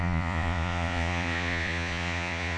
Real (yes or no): no